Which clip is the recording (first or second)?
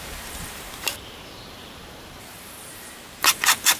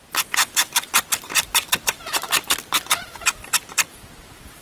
second